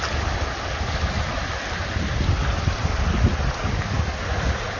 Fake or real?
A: real